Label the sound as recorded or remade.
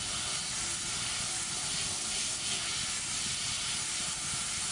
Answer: recorded